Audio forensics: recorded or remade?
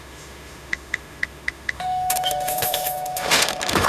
remade